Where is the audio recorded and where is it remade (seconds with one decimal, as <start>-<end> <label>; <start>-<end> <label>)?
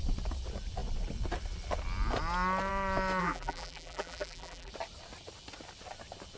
0.0-3.2 recorded; 3.2-4.7 remade; 4.7-6.4 recorded